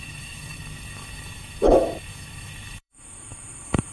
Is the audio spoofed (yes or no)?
yes